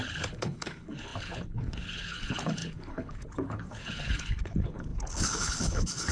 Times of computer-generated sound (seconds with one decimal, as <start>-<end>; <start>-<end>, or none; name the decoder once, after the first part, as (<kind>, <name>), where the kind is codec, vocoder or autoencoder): 0.0-6.1 (codec, HILCodec)